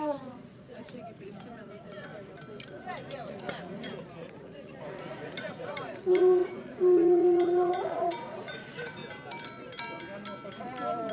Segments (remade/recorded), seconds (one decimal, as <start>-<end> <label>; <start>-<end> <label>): 0.0-2.1 remade; 2.1-2.7 recorded; 2.7-9.0 remade; 9.0-11.1 recorded